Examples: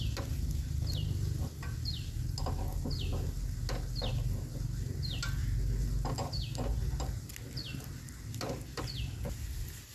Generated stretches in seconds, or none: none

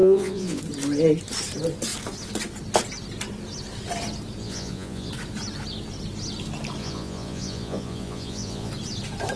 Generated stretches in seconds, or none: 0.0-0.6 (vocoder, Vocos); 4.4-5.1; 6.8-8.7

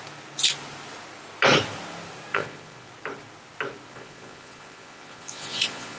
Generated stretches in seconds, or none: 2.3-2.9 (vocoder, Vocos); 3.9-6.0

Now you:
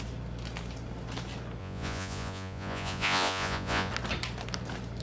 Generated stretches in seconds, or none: 1.6-3.9 (vocoder, Vocos)

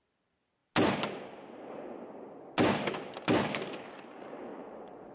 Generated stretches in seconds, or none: 4.5-5.1 (vocoder, Vocos)

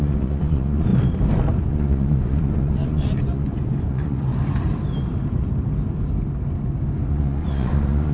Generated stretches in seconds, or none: 0.0-0.9 (vocoder, Vocos); 1.6-4.3; 7.1-8.1

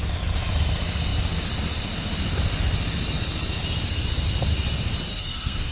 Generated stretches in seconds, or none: 5.1-5.7 (codec, SNAC)

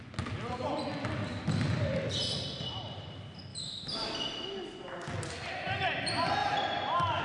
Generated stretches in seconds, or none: 6.4-7.2 (vocoder, BigVGAN v2)